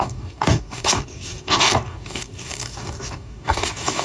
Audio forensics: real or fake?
fake